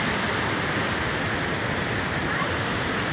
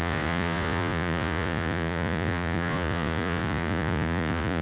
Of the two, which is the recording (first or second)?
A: first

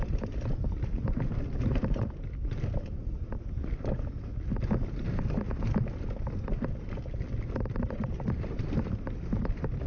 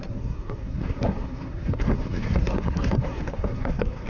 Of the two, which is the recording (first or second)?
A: first